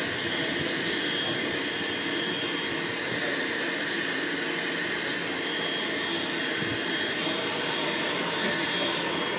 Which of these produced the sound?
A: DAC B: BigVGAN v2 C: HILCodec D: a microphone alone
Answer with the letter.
D